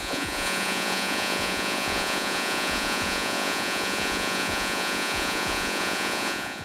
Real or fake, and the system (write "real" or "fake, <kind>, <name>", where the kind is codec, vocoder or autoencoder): fake, vocoder, Vocos